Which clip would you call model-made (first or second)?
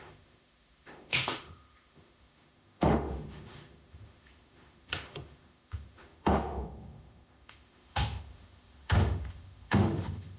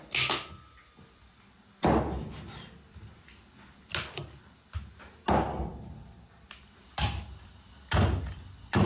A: first